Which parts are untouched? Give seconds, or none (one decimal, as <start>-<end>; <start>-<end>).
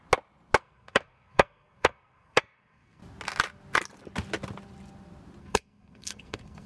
0.0-0.6; 3.0-5.4